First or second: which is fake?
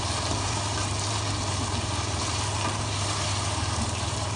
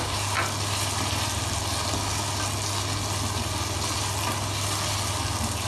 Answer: first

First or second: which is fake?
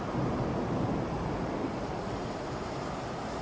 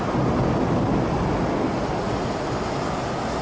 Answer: first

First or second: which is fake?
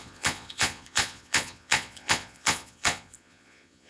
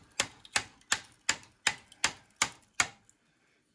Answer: first